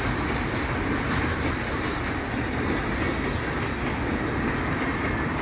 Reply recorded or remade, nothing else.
recorded